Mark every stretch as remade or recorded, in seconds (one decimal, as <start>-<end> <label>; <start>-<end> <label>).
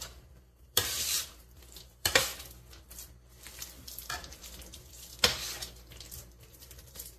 0.0-2.3 remade; 2.3-4.0 recorded; 4.0-7.2 remade